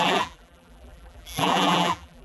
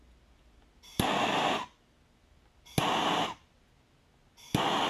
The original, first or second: second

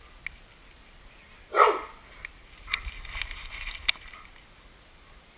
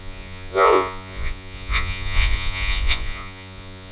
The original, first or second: first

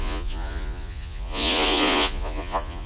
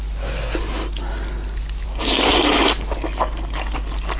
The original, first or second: second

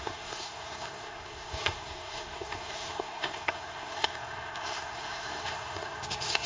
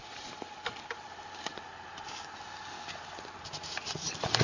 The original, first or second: second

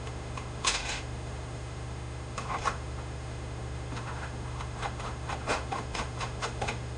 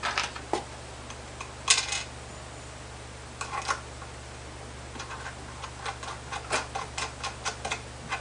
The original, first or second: second